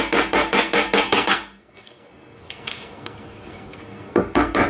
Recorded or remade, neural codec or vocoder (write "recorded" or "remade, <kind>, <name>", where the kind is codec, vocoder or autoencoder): remade, codec, SNAC